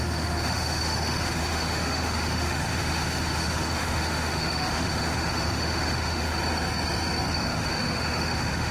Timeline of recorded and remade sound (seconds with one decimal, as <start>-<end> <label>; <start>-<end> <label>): 0.0-6.4 remade; 6.4-7.3 recorded; 7.3-8.7 remade